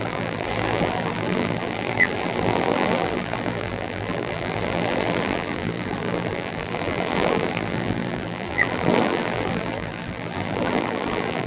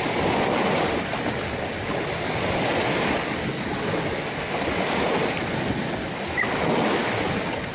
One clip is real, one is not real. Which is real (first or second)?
second